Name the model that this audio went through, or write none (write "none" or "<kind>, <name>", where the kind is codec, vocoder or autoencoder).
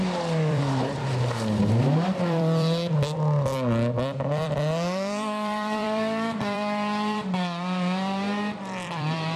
vocoder, BigVGAN v2